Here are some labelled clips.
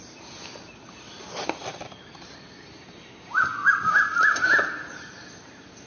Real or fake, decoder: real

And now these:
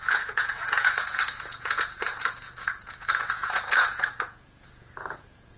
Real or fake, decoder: fake, vocoder, Vocos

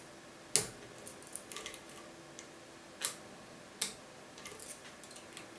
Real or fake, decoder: real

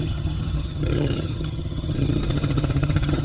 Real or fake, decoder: fake, vocoder, HiFi-GAN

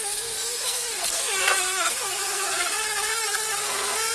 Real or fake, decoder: fake, codec, SNAC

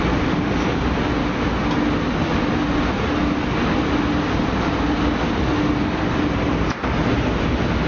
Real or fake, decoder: real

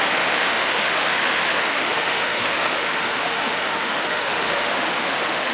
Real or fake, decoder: fake, autoencoder, DAC-VAE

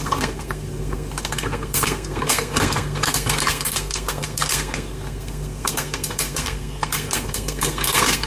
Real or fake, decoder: fake, codec, SNAC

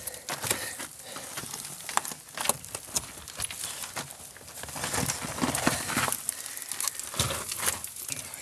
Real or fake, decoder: real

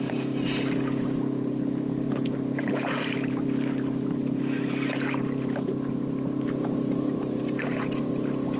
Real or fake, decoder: fake, vocoder, BigVGAN v2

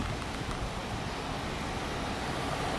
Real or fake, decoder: real